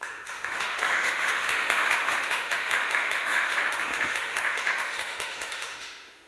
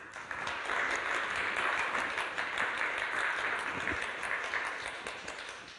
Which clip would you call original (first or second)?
second